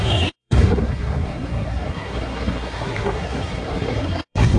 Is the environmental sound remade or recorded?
remade